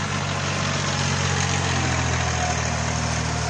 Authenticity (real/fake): real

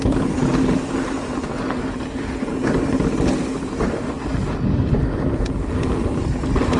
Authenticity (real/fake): real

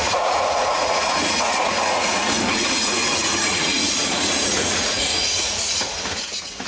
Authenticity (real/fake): fake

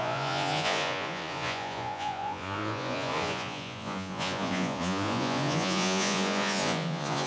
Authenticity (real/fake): fake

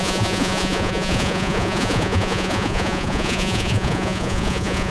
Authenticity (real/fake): fake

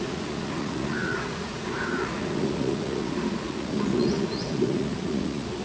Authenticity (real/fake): fake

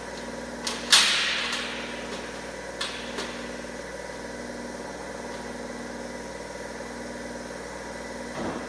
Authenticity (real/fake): real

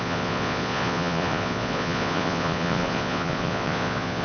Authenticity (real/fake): fake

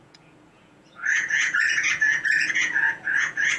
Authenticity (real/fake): fake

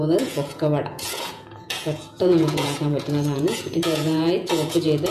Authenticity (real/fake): fake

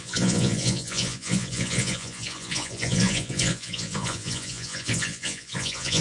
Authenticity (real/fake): fake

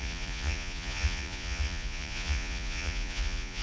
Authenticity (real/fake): fake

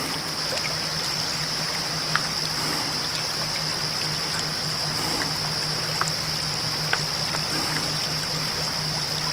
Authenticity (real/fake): real